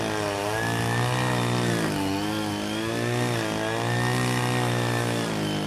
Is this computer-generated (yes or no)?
no